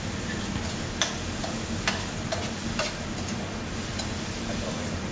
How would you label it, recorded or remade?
recorded